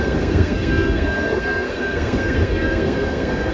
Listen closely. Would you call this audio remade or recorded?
remade